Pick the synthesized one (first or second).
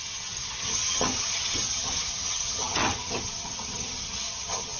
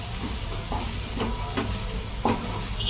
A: first